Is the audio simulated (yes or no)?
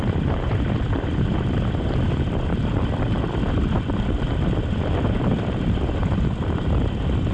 yes